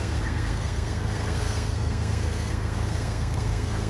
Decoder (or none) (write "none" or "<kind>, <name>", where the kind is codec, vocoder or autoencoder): codec, SNAC